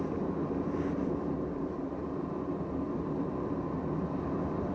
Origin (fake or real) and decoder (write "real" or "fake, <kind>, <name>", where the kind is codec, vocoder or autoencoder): real